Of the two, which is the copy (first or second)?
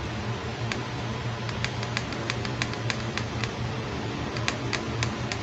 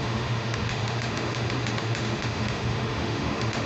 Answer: second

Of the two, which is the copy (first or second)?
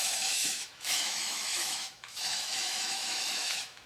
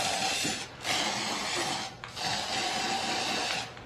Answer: first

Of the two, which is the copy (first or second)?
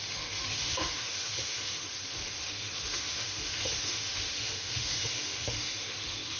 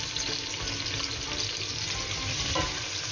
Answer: first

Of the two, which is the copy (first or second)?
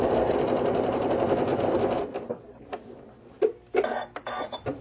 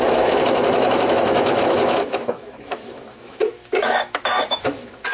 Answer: second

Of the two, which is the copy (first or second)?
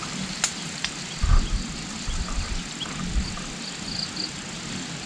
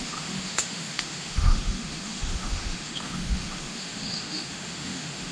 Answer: second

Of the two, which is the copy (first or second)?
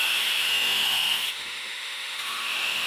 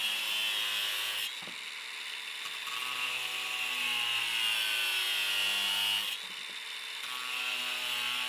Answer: first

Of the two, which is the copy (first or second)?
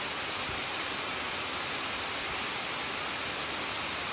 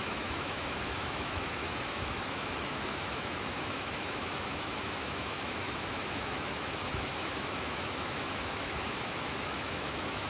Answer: second